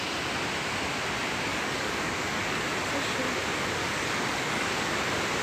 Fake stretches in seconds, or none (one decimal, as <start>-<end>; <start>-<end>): 1.5-2.6; 3.8-4.8